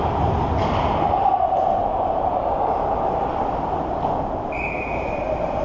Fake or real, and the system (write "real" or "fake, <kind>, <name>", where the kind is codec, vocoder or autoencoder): fake, vocoder, BigVGAN v2